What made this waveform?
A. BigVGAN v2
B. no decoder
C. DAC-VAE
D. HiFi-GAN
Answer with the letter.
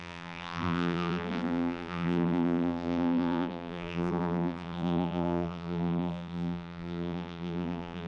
A